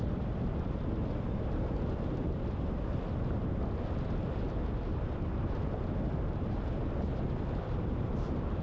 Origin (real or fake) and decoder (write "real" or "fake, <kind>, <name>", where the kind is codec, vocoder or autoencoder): real